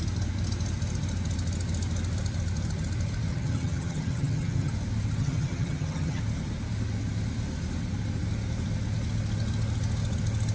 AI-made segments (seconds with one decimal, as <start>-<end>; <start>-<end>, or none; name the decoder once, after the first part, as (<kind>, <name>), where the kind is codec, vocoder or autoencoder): 3.3-4.7 (vocoder, HiFi-GAN); 5.2-6.2